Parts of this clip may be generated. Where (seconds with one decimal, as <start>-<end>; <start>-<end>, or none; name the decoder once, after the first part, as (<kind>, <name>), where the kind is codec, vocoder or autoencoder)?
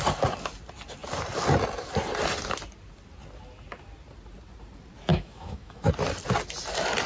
5.1-5.9 (autoencoder, DAC-VAE)